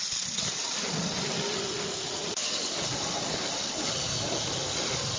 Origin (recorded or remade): recorded